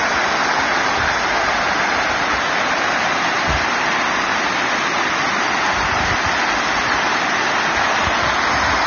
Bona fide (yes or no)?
yes